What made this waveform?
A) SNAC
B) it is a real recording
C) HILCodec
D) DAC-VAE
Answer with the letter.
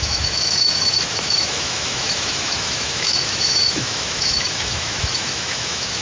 D